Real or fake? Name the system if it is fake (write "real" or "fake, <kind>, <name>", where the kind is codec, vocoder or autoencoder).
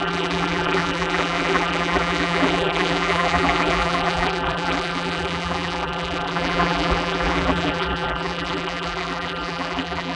fake, vocoder, BigVGAN v2